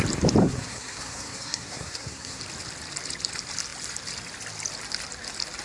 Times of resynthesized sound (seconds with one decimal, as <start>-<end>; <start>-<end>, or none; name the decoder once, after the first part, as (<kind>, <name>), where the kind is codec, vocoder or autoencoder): 0.4-2.4 (codec, SNAC)